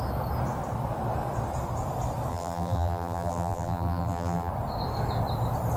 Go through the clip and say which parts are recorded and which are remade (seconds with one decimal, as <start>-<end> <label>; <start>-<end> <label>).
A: 0.0-2.3 recorded; 2.3-4.5 remade; 4.5-5.8 recorded